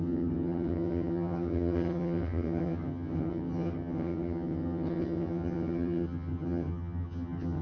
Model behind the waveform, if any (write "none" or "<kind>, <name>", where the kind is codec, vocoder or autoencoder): vocoder, HiFi-GAN